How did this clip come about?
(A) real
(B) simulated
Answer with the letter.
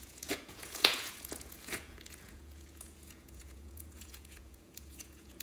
B